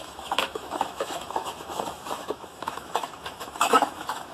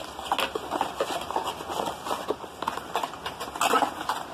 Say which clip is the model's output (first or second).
first